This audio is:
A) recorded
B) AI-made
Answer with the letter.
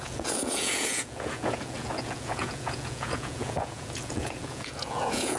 B